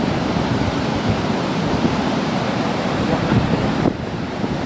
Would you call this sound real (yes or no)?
no